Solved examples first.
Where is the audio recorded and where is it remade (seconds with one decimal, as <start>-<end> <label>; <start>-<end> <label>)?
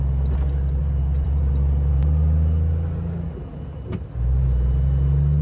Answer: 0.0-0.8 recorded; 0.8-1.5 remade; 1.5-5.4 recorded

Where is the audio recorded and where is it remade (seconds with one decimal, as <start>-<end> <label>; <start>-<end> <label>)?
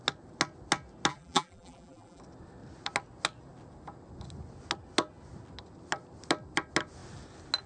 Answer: 0.0-1.1 recorded; 1.1-2.2 remade; 2.2-7.7 recorded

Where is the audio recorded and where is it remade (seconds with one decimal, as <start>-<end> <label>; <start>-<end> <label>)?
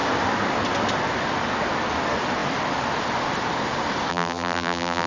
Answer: 0.0-4.1 recorded; 4.1-5.1 remade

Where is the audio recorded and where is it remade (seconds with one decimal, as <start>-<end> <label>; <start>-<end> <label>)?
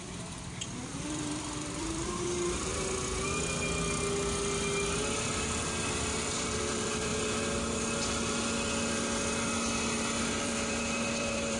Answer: 0.0-2.7 remade; 2.7-5.6 recorded; 5.6-7.1 remade; 7.1-10.4 recorded; 10.4-11.6 remade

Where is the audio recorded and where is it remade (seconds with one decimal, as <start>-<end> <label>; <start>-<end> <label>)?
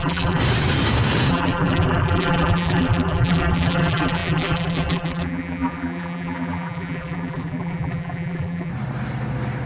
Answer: 0.0-0.4 remade; 0.4-1.3 recorded; 1.3-8.7 remade; 8.7-9.7 recorded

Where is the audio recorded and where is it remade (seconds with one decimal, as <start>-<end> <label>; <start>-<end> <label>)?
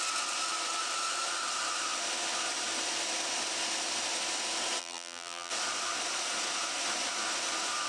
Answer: 0.0-4.8 recorded; 4.8-5.5 remade; 5.5-7.9 recorded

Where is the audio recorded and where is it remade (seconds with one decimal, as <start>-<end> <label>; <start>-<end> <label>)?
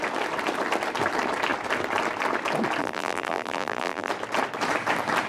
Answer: 0.0-2.8 recorded; 2.8-4.1 remade; 4.1-5.3 recorded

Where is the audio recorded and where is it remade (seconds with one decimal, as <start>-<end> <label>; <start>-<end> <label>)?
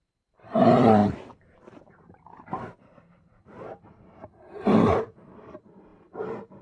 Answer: 0.0-6.6 remade